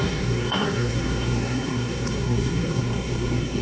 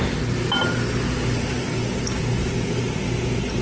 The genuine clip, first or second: second